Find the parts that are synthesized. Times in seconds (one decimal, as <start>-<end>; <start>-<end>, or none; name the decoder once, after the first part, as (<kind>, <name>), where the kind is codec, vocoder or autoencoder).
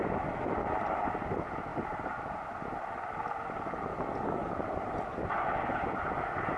none